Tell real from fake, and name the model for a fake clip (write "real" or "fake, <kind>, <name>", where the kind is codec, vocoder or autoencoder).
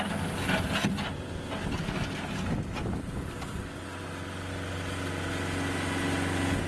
real